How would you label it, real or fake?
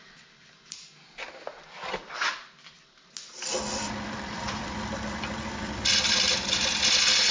real